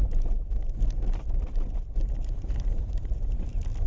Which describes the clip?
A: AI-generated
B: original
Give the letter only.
A